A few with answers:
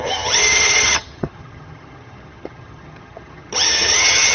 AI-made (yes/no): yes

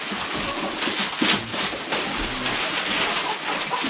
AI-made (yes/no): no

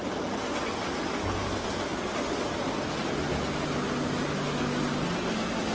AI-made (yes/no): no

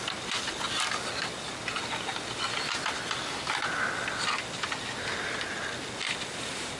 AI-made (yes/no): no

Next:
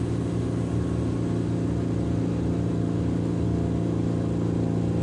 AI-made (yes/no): no